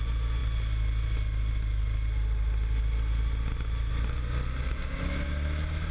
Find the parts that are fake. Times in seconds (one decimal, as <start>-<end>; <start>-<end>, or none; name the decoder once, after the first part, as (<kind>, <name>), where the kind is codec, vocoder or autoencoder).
none